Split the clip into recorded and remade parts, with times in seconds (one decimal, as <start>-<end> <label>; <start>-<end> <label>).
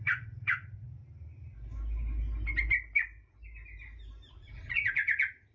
0.0-1.0 remade; 1.0-4.3 recorded; 4.3-5.5 remade